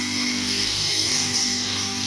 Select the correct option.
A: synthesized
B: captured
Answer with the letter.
A